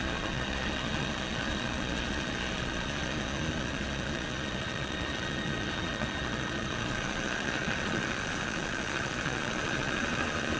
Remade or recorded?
remade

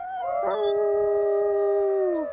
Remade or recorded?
recorded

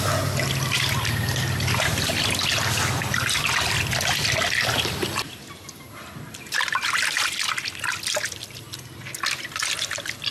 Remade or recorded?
recorded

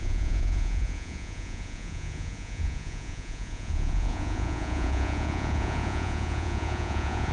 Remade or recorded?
remade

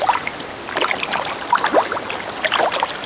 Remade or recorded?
recorded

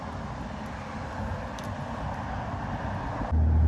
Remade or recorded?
recorded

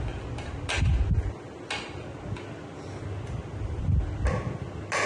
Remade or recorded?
recorded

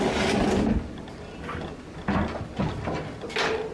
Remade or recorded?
recorded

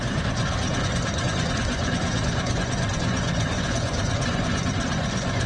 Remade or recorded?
remade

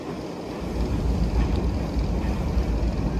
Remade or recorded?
recorded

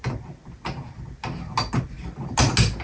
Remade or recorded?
recorded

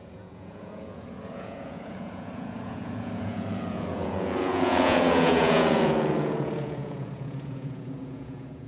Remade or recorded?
remade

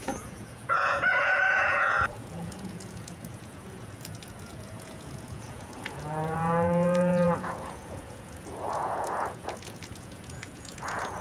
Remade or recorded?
remade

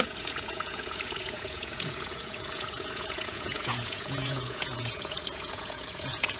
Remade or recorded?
remade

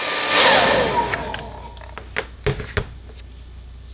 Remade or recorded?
recorded